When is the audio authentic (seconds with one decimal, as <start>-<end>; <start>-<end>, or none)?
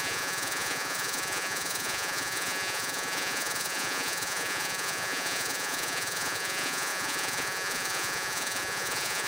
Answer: none